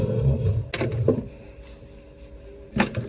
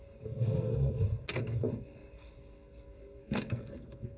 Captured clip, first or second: first